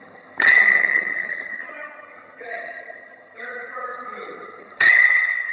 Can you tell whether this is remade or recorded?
remade